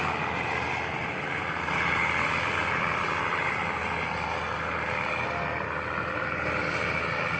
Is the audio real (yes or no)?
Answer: yes